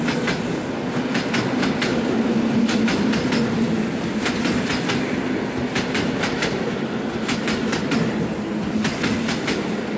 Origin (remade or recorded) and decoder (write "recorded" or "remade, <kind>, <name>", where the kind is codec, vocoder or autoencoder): recorded